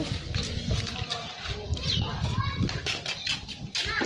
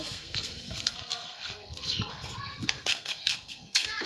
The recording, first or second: first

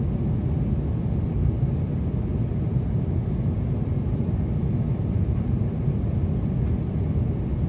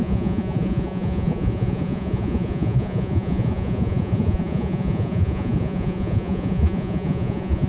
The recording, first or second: first